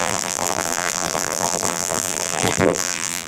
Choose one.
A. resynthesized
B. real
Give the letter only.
A